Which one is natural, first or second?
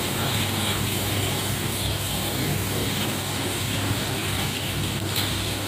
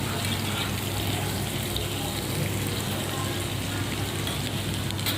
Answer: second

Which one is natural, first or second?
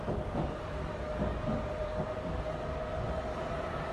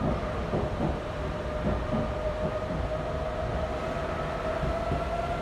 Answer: second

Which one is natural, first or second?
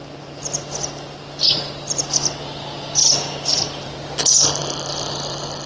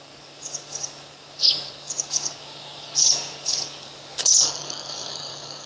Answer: first